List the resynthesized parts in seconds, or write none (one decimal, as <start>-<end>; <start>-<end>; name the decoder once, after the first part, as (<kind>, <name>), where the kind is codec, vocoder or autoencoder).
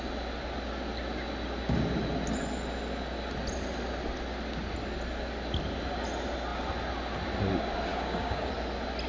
7.9-8.5 (codec, DAC)